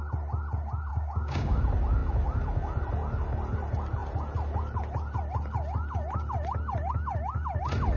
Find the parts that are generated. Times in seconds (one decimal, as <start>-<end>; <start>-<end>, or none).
0.9-1.6